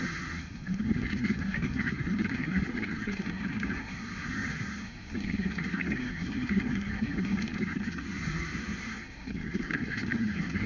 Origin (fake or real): fake